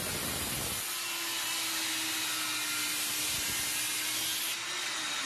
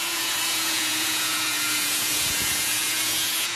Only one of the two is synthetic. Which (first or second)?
second